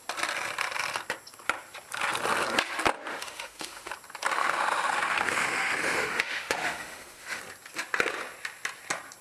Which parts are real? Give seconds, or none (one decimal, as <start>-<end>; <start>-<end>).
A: 0.0-3.1; 3.9-4.4; 7.4-9.2